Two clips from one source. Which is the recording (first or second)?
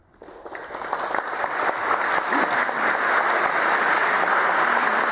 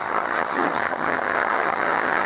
first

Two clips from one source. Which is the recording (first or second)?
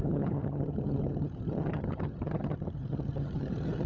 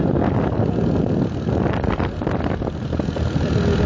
second